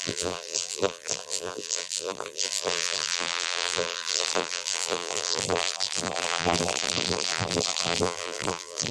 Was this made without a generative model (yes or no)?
no